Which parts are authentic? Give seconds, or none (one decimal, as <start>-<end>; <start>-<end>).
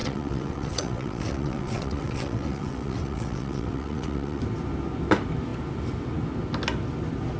4.4-7.4